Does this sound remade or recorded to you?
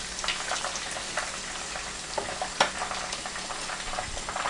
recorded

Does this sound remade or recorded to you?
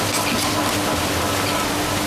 recorded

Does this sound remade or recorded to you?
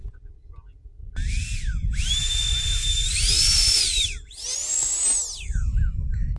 recorded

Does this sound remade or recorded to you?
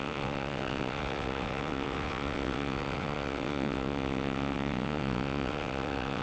remade